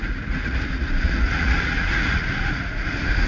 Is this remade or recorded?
remade